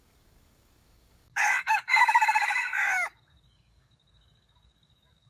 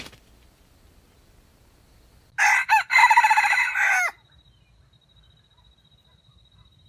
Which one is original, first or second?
second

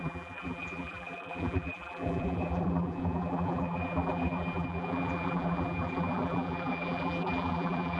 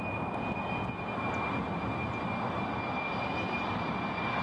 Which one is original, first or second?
second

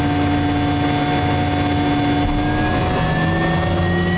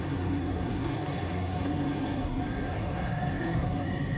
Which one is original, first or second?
first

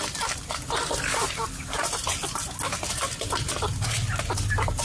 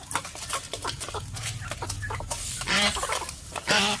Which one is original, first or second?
first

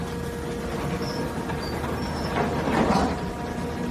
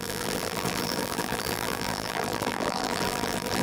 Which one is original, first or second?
first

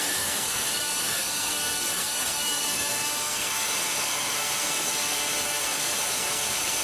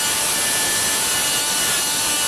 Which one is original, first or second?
second